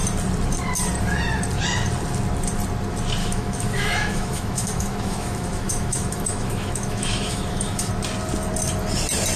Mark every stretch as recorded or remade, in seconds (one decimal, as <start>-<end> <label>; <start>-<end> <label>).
0.0-3.2 recorded; 3.2-7.9 remade; 7.9-9.4 recorded